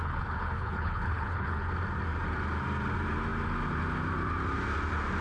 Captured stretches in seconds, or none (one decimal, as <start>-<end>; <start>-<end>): 1.7-5.2